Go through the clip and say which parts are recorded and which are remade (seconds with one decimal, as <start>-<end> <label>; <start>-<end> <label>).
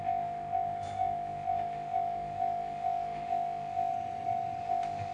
0.0-3.9 remade; 3.9-4.6 recorded; 4.6-5.1 remade